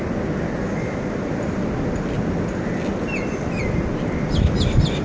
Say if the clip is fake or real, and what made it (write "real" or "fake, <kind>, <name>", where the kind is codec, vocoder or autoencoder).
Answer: real